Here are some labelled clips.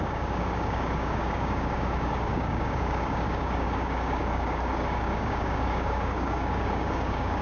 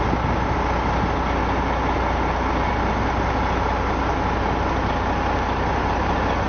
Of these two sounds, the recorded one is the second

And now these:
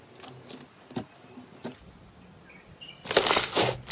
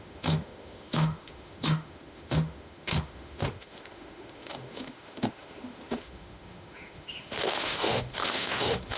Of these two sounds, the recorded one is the first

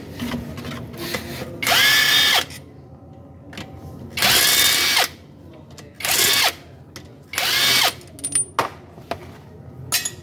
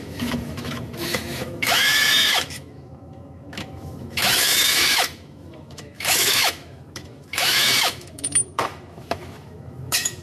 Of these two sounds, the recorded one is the first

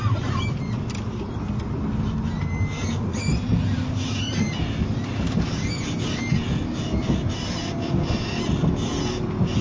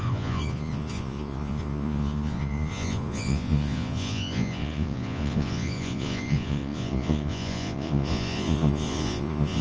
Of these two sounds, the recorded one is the first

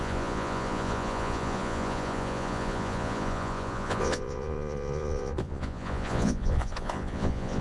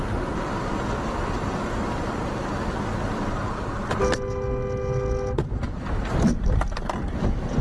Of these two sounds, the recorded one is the second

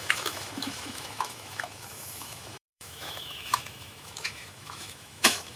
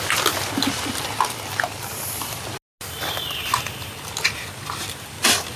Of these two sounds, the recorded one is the second